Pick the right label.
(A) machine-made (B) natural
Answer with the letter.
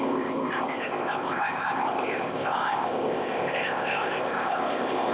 A